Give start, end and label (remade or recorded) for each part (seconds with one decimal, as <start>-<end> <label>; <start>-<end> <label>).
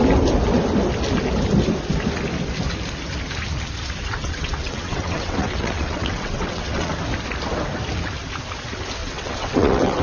0.0-4.0 recorded; 4.0-6.9 remade; 6.9-9.0 recorded; 9.0-10.0 remade